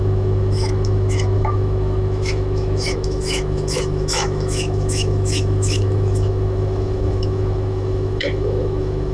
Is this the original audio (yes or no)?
no